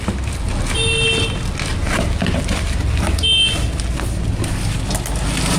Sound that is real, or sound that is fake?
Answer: real